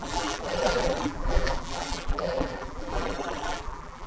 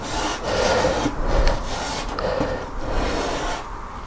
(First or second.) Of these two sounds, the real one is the second